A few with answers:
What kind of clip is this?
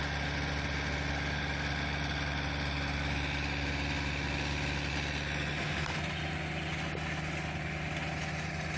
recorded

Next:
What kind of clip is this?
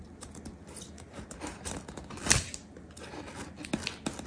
recorded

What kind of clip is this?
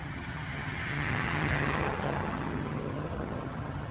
remade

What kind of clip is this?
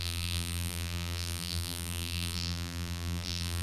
remade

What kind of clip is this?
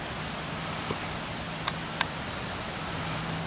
recorded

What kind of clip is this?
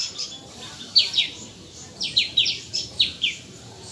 remade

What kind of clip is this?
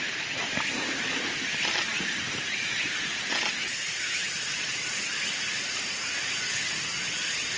recorded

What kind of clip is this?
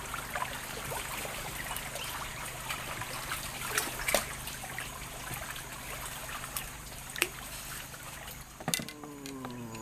recorded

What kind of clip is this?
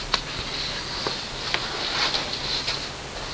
recorded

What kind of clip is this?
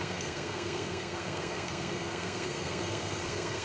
remade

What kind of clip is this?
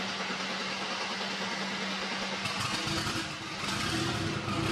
recorded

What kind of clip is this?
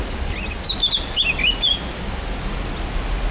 recorded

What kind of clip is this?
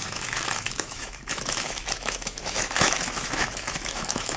remade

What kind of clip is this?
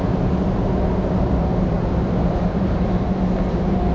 recorded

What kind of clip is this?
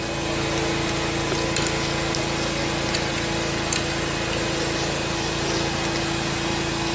recorded